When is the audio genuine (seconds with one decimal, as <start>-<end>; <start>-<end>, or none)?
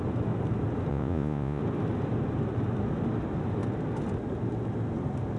0.0-0.9; 1.6-5.4